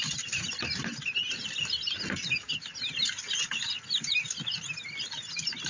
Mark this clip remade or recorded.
recorded